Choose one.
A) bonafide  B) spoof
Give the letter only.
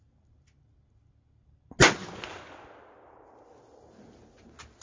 A